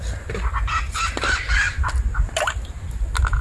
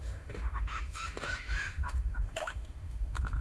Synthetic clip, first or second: second